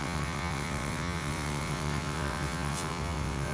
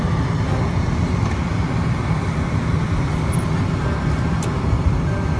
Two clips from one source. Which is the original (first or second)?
second